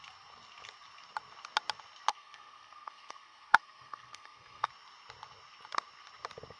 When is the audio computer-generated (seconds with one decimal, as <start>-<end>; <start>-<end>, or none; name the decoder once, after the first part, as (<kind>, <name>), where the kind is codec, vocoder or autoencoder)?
2.1-4.7 (codec, SNAC)